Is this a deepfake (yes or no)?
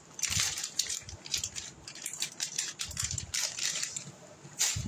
yes